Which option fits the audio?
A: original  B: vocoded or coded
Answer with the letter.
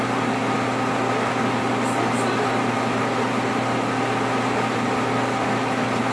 A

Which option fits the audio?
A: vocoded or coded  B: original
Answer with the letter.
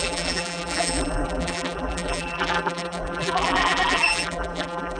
A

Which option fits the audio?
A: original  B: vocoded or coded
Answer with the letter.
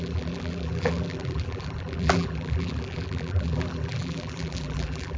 B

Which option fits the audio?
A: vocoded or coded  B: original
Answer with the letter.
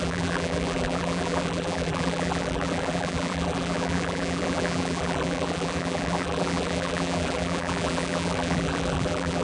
A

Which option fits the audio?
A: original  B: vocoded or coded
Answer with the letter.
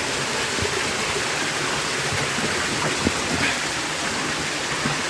B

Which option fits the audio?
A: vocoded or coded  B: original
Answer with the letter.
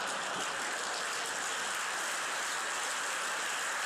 B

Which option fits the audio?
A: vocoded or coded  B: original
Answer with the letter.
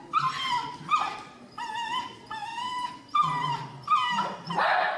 B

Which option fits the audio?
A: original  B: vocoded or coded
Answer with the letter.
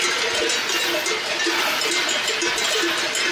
A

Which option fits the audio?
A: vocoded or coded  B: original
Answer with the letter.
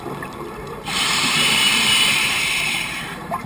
A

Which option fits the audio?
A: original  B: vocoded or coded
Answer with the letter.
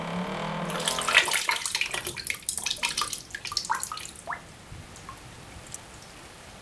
A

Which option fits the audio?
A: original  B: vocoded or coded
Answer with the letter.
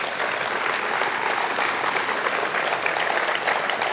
A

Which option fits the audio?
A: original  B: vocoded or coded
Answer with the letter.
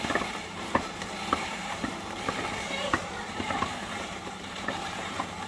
B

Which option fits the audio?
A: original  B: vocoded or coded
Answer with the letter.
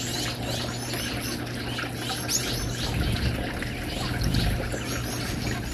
A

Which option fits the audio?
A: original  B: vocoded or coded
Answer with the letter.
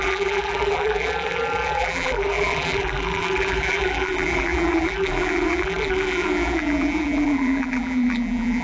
B